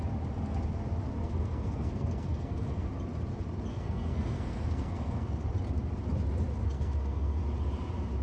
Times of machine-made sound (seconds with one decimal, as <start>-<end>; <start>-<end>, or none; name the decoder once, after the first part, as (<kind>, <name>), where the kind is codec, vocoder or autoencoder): 1.2-2.9 (codec, SNAC); 3.7-5.5; 6.6-7.4